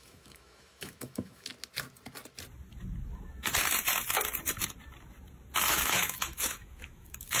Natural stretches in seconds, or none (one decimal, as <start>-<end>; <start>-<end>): 1.5-5.7